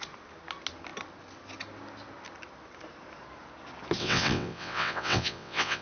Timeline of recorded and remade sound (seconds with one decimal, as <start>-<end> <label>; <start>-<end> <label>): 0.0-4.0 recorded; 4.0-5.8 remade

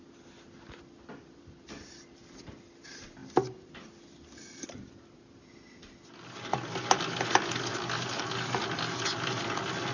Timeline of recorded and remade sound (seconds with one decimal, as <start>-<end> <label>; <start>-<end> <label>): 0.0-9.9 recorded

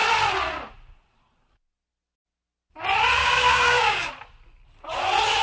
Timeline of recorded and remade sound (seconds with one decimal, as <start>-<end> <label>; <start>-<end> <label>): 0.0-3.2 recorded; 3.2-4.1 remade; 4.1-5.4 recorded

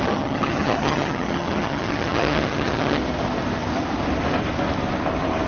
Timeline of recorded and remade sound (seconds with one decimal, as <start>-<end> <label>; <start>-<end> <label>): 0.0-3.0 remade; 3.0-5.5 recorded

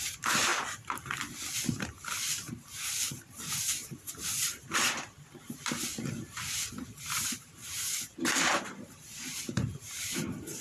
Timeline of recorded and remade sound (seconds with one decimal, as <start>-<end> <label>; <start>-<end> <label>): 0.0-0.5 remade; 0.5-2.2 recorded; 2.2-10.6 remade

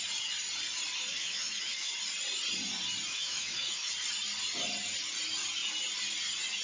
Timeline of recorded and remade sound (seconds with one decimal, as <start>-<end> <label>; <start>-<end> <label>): 0.0-1.1 recorded; 1.1-1.9 remade; 1.9-3.1 recorded; 3.1-3.9 remade; 3.9-6.6 recorded